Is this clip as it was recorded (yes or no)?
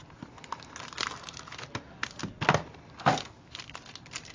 yes